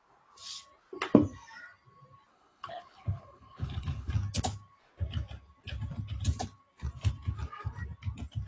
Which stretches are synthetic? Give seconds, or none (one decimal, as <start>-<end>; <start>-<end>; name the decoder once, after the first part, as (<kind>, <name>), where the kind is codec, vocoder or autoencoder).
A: 2.3-4.1 (codec, HILCodec)